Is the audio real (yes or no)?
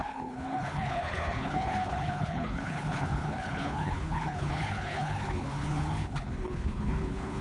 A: no